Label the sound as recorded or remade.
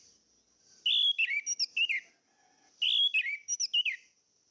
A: recorded